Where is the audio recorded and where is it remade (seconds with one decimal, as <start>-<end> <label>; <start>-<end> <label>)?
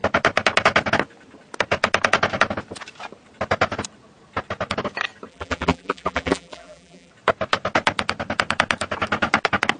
0.0-5.3 recorded; 5.3-7.1 remade; 7.1-9.8 recorded